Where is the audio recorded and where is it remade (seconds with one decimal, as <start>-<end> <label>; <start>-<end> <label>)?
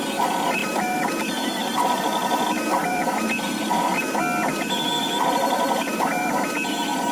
0.0-0.6 recorded; 0.6-2.0 remade; 2.0-2.7 recorded; 2.7-4.0 remade; 4.0-4.5 recorded; 4.5-6.3 remade; 6.3-7.1 recorded